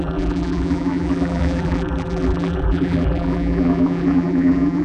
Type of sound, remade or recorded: remade